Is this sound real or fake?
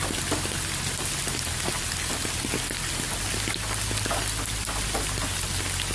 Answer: real